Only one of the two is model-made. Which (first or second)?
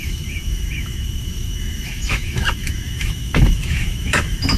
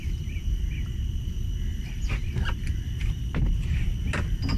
first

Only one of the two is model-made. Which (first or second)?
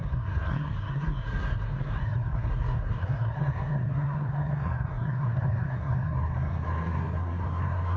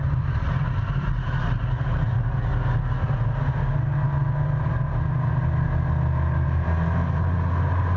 first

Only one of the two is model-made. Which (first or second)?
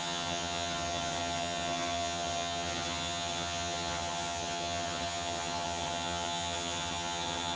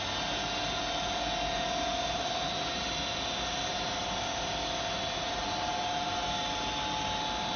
first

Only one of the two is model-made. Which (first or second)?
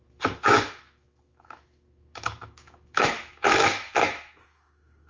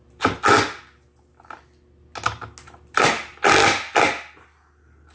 first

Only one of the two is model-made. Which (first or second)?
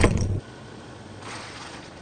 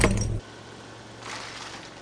first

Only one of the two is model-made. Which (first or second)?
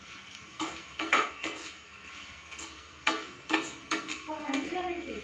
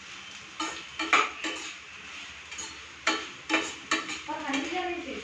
first